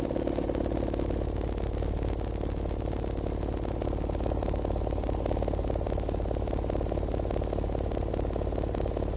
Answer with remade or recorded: recorded